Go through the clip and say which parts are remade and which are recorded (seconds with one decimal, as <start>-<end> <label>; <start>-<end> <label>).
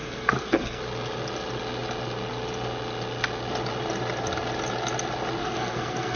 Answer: 0.0-0.8 remade; 0.8-5.4 recorded; 5.4-6.2 remade